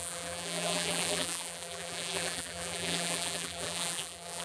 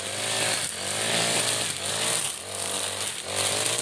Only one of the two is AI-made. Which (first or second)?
first